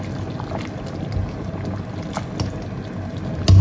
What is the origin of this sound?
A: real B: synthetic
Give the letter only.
A